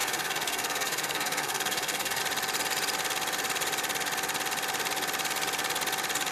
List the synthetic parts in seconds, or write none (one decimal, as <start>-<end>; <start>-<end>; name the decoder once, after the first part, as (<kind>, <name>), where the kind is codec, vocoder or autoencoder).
0.0-2.2 (codec, SNAC)